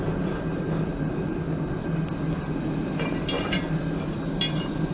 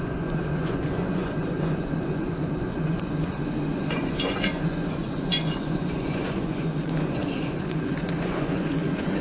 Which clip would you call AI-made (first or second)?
second